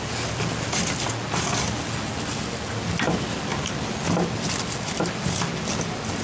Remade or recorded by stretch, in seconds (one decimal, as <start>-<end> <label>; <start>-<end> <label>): 0.0-6.2 recorded